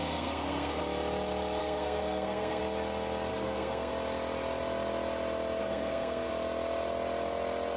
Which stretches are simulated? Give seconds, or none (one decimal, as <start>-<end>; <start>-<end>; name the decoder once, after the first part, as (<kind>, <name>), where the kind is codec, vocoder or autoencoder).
0.0-0.8 (codec, SNAC); 1.6-2.6; 3.3-3.9; 5.6-6.3